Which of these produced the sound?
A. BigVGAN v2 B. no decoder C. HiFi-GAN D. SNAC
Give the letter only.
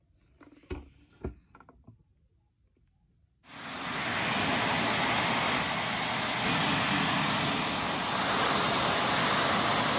B